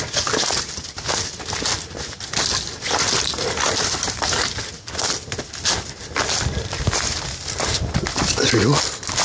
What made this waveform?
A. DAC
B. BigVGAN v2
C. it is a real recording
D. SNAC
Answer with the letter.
C